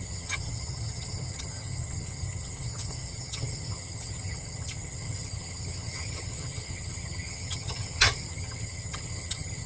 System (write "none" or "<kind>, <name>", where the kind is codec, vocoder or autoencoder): vocoder, HiFi-GAN